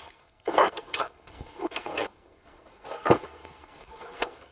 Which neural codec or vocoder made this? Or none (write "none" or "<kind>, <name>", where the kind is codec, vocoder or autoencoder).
codec, SNAC